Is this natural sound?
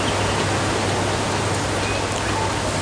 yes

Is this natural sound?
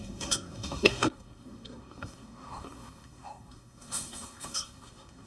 no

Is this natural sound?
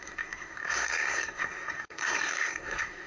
no